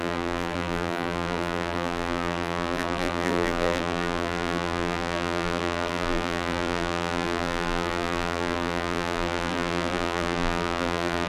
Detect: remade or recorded remade